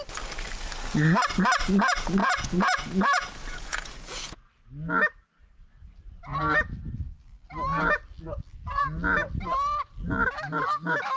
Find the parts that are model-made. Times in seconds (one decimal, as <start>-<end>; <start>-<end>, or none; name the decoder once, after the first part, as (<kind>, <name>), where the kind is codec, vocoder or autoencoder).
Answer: 2.2-4.5 (vocoder, Vocos)